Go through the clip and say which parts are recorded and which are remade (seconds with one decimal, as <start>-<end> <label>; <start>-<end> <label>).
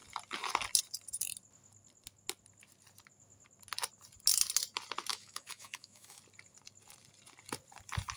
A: 0.0-5.1 recorded; 5.1-6.2 remade; 6.2-8.2 recorded